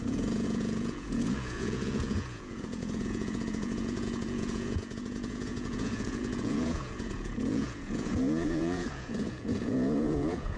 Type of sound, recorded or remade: remade